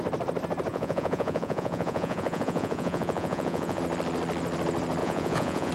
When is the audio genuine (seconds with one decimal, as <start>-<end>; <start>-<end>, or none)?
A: 0.0-0.7; 3.8-5.0